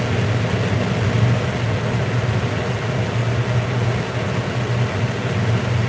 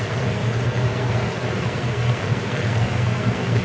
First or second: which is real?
first